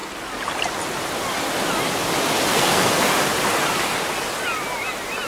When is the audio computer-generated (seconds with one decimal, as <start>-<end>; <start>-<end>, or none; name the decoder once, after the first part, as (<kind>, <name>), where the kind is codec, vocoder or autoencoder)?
2.5-3.1 (codec, SNAC)

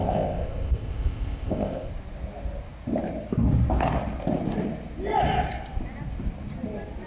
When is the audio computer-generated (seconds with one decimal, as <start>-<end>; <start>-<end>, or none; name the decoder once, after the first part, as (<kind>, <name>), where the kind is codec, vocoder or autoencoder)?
0.0-1.9 (codec, ZipCodec)

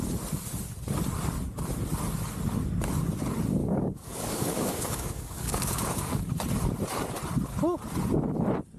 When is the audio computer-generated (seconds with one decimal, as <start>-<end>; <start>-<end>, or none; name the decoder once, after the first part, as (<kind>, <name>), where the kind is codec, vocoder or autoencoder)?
3.6-6.2 (codec, DAC)

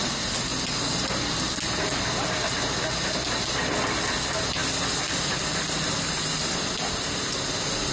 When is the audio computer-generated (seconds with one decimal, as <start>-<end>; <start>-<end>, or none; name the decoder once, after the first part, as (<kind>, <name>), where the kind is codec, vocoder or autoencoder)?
none

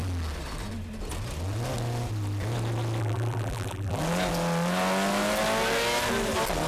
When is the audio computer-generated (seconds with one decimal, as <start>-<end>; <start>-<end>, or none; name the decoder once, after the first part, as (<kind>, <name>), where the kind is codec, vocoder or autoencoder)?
3.0-4.0 (vocoder, BigVGAN v2)

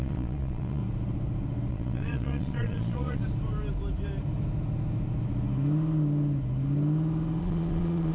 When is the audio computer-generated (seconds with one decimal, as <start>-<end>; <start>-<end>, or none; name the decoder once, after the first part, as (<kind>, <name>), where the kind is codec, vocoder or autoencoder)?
0.0-0.8 (vocoder, Vocos); 1.7-3.2; 7.4-8.1

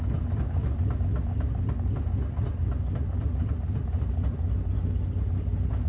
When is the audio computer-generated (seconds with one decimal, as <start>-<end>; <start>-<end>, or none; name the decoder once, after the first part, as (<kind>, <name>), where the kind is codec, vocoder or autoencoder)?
none

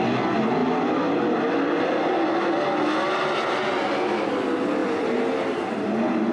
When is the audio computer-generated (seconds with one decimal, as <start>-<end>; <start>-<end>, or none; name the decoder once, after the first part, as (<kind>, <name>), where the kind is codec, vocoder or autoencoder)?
none